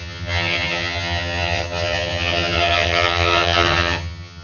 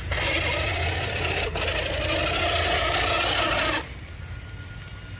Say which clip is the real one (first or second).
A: second